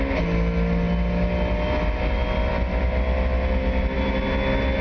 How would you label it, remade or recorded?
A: recorded